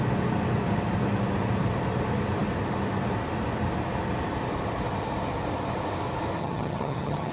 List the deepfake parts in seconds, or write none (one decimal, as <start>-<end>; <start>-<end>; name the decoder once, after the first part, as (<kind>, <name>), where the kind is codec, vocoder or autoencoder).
6.4-7.3 (vocoder, HiFi-GAN)